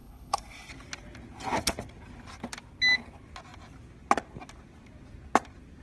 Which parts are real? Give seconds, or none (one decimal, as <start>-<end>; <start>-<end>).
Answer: 0.7-5.8